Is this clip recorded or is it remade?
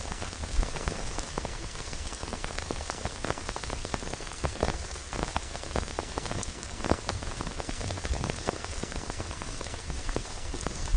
remade